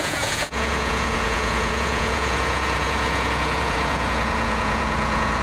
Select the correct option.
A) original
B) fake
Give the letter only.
B